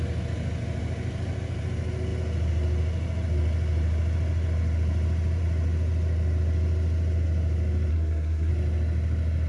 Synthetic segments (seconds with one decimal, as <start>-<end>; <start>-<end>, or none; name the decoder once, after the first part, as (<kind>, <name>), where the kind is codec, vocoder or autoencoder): 7.9-8.5 (codec, SNAC)